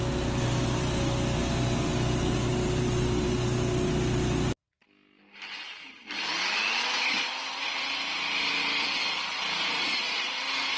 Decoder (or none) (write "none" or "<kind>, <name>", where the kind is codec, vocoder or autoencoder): none